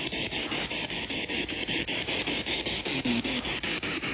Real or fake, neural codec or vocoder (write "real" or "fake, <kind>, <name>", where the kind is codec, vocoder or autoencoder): fake, codec, DAC